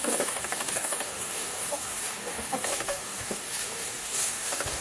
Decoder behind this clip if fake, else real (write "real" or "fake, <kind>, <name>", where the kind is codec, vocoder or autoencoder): fake, codec, DAC